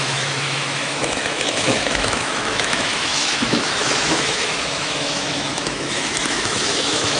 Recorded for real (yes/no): no